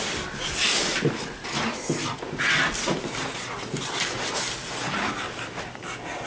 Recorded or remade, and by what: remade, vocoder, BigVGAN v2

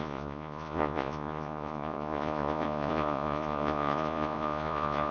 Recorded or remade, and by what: remade, vocoder, Vocos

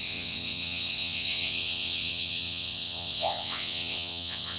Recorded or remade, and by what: remade, vocoder, WaveNeXt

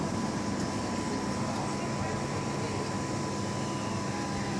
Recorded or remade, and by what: recorded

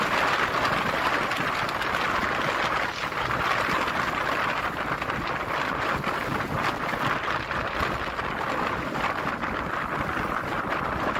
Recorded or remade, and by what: recorded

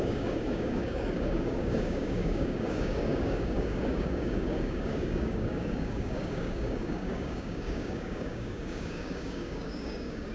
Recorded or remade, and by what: remade, codec, DAC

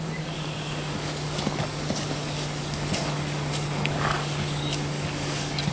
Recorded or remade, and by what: remade, codec, DAC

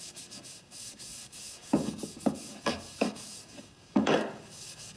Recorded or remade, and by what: remade, codec, DAC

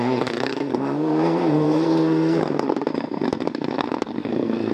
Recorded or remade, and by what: remade, codec, SNAC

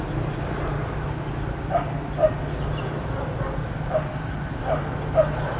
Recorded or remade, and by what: recorded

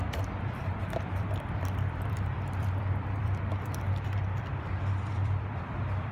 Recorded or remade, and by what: remade, vocoder, BigVGAN v2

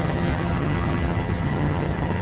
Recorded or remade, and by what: remade, vocoder, HiFi-GAN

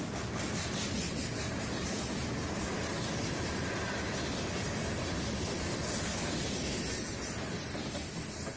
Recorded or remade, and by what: recorded